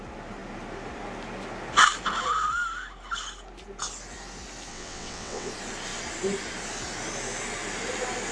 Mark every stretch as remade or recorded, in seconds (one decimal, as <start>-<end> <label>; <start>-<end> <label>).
0.0-4.7 recorded; 4.7-5.5 remade; 5.5-8.3 recorded